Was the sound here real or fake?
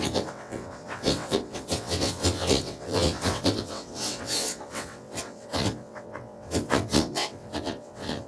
fake